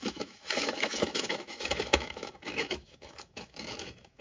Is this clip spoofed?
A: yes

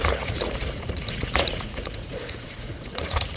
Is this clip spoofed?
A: yes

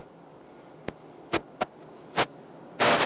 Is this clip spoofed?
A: no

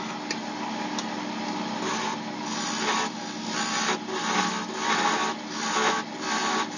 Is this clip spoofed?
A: no